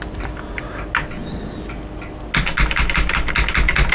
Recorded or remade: recorded